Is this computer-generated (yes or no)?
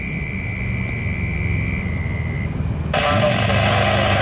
no